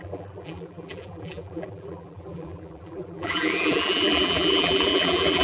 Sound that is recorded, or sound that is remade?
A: remade